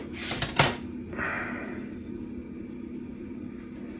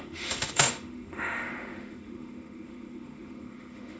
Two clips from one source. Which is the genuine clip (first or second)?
first